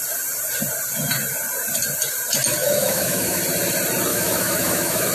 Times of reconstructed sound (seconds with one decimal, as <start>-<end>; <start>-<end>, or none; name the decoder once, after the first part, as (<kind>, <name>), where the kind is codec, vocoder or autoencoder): 2.6-3.4 (autoencoder, DAC-VAE); 4.1-5.1